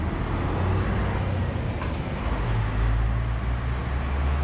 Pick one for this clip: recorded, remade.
recorded